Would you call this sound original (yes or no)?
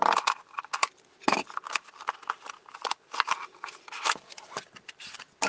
yes